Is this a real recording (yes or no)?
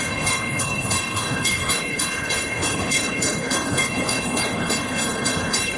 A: no